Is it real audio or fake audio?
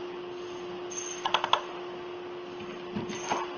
real